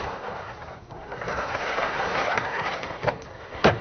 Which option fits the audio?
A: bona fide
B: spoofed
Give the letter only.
B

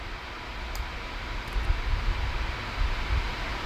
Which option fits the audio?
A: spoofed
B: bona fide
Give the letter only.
A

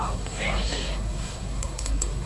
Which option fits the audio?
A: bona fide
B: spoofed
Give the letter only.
B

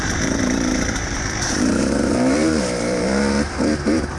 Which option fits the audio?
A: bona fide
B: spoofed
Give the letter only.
B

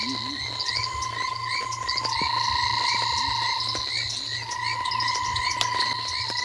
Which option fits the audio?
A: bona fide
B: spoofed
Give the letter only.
A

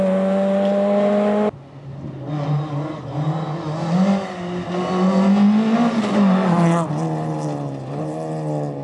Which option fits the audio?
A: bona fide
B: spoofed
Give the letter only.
A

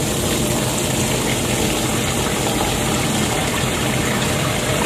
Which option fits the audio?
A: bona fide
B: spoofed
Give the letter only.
A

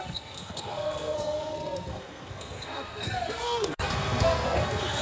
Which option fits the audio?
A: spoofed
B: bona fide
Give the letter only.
A